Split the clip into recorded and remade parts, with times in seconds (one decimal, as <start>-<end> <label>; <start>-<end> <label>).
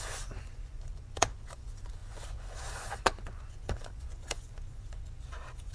0.0-5.7 remade